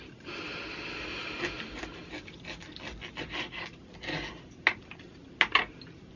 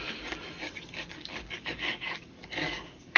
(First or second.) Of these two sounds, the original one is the first